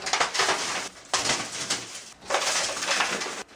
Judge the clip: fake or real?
real